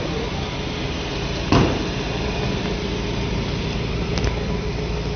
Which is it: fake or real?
real